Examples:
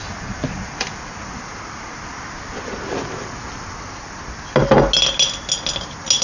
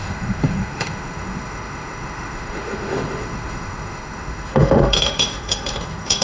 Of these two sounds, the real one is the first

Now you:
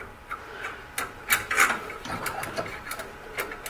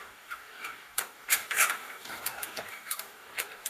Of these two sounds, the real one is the first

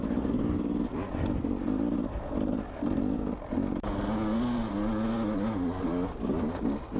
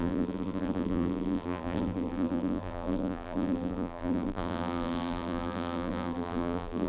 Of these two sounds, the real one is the first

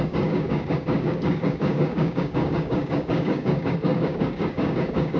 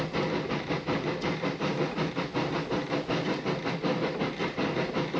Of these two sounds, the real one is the second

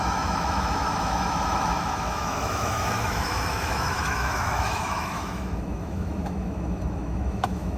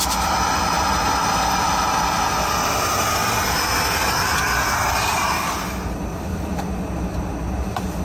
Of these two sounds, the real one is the second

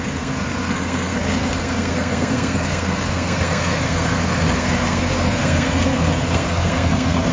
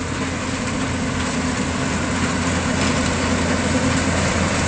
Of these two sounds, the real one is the second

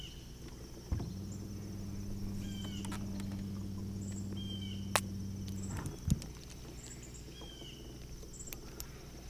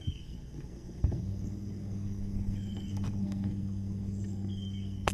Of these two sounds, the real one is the first